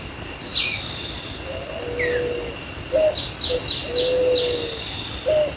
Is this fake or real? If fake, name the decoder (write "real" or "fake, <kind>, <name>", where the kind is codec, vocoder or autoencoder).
real